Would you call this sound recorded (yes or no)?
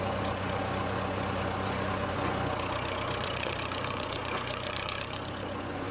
no